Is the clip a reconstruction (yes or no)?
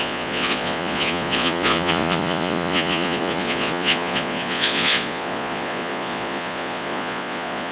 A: yes